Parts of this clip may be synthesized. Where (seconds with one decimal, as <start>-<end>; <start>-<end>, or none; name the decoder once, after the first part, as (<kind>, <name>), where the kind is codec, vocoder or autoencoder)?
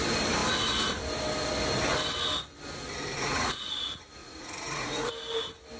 3.1-3.6 (vocoder, Vocos); 4.2-5.1